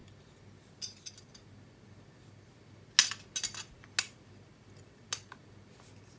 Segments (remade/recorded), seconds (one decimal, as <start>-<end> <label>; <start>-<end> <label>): 0.0-6.2 recorded